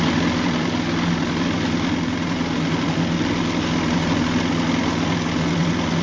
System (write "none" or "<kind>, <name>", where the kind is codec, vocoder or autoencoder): none